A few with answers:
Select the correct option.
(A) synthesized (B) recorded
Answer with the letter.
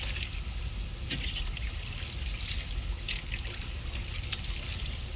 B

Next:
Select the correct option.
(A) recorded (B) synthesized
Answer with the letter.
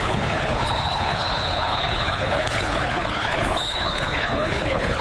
B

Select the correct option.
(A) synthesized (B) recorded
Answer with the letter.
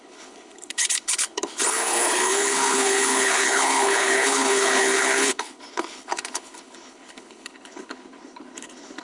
A